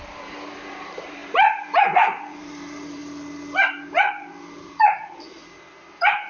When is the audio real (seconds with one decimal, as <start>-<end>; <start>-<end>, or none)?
3.0-3.9; 5.4-6.3